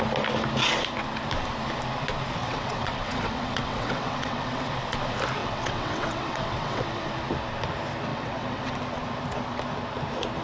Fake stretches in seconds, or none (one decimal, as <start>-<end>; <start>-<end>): 2.4-4.7; 5.4-7.1; 8.1-8.8